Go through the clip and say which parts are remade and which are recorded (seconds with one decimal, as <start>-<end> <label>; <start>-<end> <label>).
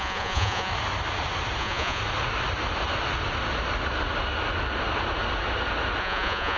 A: 0.0-0.7 remade; 0.7-1.6 recorded; 1.6-2.0 remade; 2.0-6.0 recorded; 6.0-6.6 remade